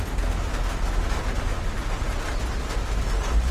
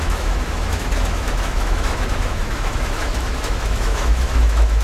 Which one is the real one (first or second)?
first